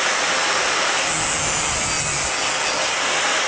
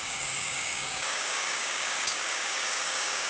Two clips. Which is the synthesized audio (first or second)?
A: second